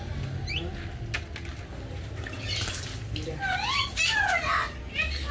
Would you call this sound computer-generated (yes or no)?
no